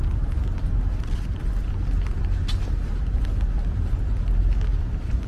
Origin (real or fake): real